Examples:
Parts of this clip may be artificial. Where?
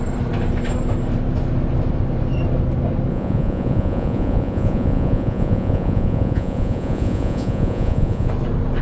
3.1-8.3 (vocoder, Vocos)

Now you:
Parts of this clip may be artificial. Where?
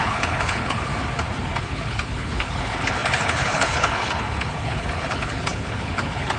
0.0-0.9 (codec, HILCodec); 1.6-6.4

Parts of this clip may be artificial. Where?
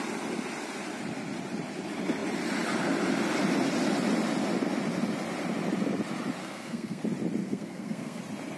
6.4-7.0 (codec, SNAC); 7.4-8.2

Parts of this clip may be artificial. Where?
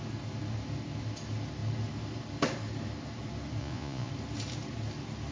3.6-4.1 (vocoder, Vocos)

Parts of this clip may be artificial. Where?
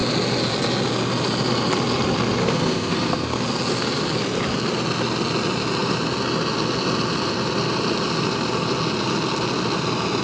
2.4-3.4 (codec, SNAC)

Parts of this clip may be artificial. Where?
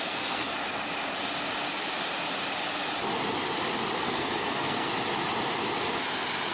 0.0-0.5 (codec, SNAC); 4.0-4.9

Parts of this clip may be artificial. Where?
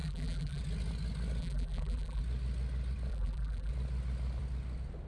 0.0-0.6 (vocoder, BigVGAN v2); 1.4-2.2; 3.1-3.7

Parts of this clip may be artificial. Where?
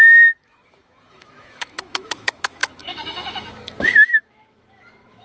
0.0-5.2 (autoencoder, DAC-VAE)